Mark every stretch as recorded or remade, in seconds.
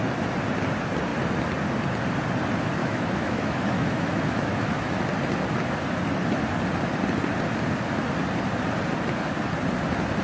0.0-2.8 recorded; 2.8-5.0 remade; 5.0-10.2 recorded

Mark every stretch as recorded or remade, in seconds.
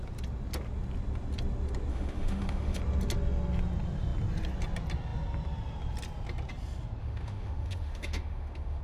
0.0-1.9 recorded; 1.9-2.8 remade; 2.8-7.0 recorded; 7.0-8.8 remade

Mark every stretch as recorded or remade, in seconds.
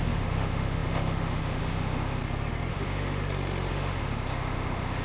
0.0-2.2 remade; 2.2-2.7 recorded; 2.7-3.2 remade; 3.2-3.7 recorded; 3.7-5.0 remade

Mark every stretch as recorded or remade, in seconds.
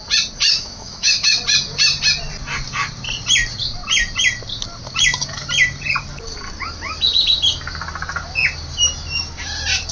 0.0-0.5 recorded; 0.5-1.4 remade; 1.4-9.9 recorded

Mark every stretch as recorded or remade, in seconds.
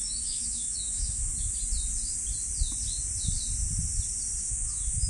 0.0-1.3 remade; 1.3-4.4 recorded; 4.4-5.1 remade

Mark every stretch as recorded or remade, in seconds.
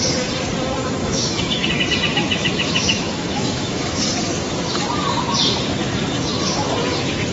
0.0-1.0 recorded; 1.0-1.7 remade; 1.7-2.1 recorded; 2.1-4.0 remade; 4.0-7.3 recorded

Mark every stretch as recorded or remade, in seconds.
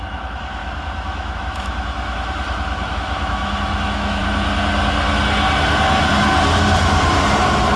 0.0-4.2 remade; 4.2-7.8 recorded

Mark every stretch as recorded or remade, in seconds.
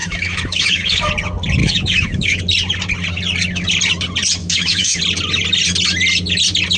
0.0-1.1 remade; 1.1-1.6 recorded; 1.6-2.4 remade; 2.4-4.4 recorded; 4.4-5.0 remade; 5.0-6.8 recorded